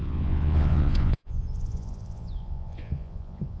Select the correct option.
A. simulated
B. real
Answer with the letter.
A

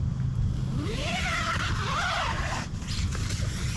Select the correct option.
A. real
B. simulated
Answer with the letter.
A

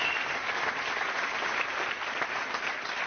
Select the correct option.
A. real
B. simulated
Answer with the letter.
A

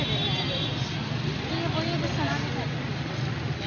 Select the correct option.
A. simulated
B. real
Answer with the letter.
B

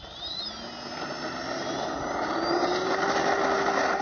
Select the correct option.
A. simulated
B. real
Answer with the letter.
B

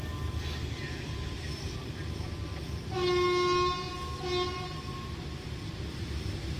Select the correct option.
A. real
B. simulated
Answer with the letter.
A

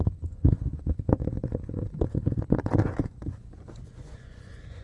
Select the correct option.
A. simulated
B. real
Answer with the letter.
A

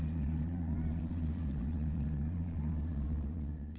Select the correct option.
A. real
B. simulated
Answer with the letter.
B